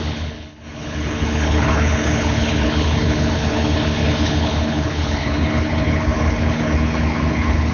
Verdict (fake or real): fake